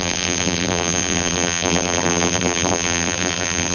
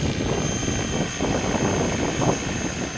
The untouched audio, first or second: second